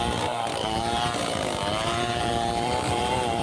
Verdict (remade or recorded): remade